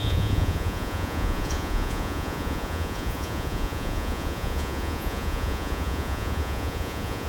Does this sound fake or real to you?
fake